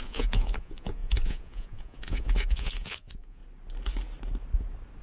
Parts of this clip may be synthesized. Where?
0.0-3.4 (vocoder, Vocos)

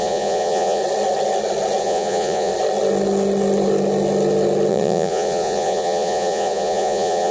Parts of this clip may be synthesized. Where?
0.0-0.8 (vocoder, Vocos); 1.8-2.5; 4.7-7.3

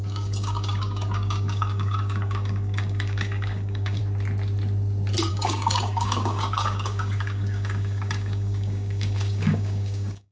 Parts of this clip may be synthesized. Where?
0.0-4.0 (codec, DAC); 5.3-10.3

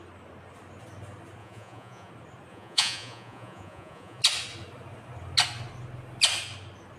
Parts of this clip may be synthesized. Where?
1.4-2.1 (vocoder, Vocos); 2.5-4.2

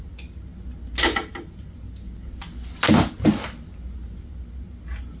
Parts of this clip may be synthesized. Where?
none